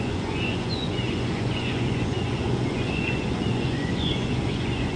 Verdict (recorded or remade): remade